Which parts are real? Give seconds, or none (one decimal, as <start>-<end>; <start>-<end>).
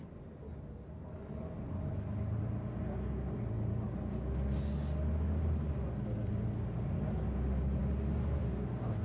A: 0.0-9.0